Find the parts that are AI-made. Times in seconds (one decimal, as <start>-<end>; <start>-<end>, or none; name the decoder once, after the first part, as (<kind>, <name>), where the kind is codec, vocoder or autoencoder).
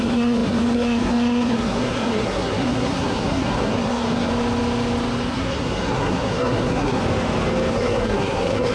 0.0-4.3 (codec, SNAC); 5.3-7.0; 7.7-8.7